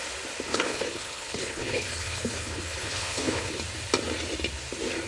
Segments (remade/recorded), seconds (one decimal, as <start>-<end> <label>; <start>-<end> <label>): 0.0-0.5 recorded; 0.5-3.6 remade; 3.6-5.1 recorded